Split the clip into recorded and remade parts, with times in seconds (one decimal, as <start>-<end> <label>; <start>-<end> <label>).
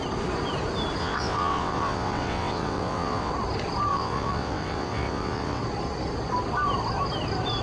0.0-1.0 recorded; 1.0-3.3 remade; 3.3-3.9 recorded; 3.9-5.6 remade; 5.6-7.6 recorded